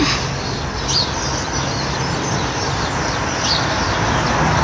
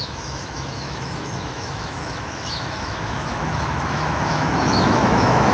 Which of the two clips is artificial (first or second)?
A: second